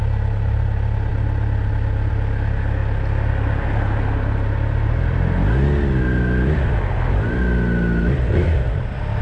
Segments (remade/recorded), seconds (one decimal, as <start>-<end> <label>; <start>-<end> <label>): 0.0-9.2 recorded